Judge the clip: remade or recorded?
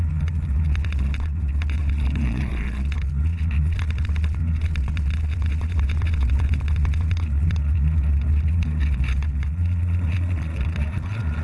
remade